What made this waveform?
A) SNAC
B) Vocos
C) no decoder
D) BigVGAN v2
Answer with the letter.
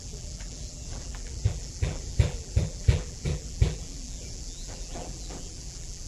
D